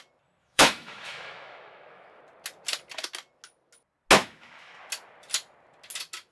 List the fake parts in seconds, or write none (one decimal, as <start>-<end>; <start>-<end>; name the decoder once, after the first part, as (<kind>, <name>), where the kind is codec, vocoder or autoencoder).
0.4-2.2 (autoencoder, DAC-VAE); 4.2-4.8